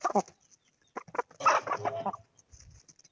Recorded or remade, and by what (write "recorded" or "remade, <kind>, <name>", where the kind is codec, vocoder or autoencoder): recorded